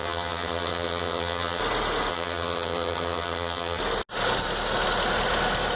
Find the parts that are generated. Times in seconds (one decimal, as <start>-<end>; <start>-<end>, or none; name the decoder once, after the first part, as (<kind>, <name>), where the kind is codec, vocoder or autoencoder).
0.0-1.6 (vocoder, HiFi-GAN); 2.1-3.8